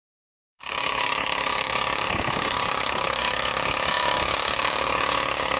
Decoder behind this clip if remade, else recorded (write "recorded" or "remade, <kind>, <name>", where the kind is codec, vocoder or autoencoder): remade, codec, DAC